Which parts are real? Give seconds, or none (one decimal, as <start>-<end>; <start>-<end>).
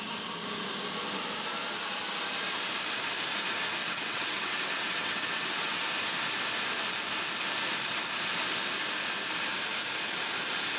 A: 0.0-3.8; 5.8-10.8